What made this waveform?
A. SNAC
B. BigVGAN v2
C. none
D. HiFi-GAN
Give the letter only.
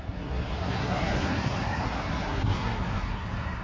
A